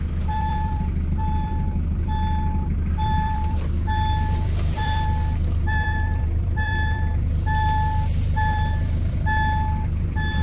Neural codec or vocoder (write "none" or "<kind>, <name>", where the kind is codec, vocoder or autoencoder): vocoder, BigVGAN v2